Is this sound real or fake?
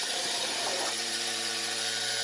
fake